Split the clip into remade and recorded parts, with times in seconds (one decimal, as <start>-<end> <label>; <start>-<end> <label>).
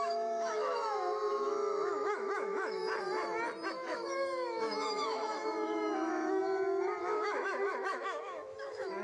0.0-2.8 remade; 2.8-3.7 recorded; 3.7-6.4 remade; 6.4-7.0 recorded; 7.0-9.0 remade